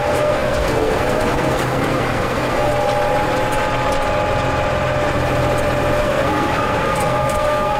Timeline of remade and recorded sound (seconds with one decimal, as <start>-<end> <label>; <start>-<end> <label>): 0.0-2.7 remade; 2.7-6.0 recorded; 6.0-7.8 remade